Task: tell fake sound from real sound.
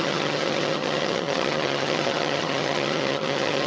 fake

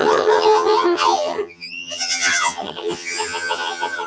fake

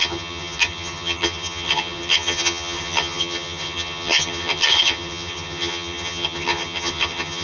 fake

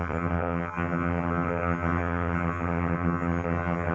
fake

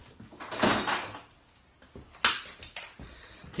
real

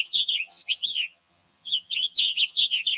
fake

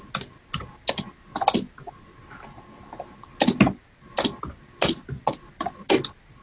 real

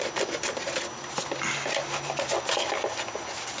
real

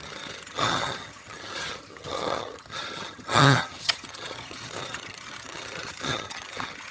fake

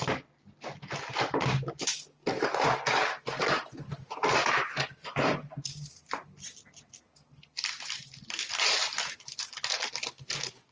real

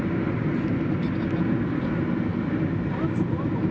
real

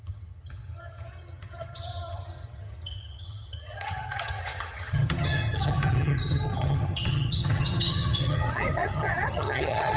fake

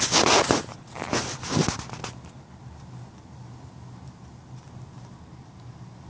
real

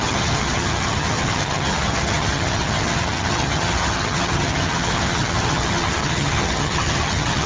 fake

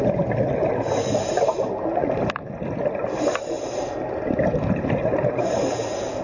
real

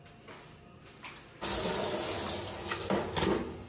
real